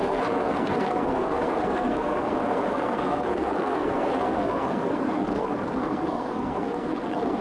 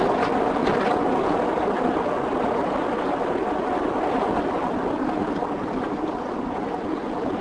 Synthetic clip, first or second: first